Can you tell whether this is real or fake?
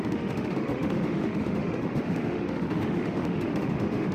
fake